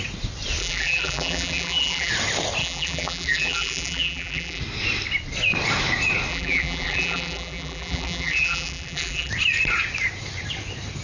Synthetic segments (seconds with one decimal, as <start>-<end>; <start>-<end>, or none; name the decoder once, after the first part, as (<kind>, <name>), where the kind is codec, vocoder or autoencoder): 0.6-2.1 (vocoder, BigVGAN v2); 2.6-4.6; 6.3-9.3